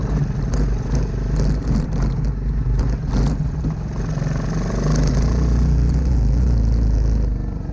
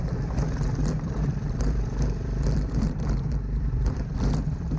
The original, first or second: first